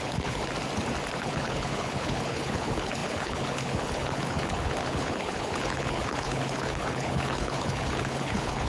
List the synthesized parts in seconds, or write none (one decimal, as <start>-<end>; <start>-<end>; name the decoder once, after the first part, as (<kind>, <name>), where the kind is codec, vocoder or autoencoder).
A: 0.0-0.4 (codec, HILCodec); 1.2-8.7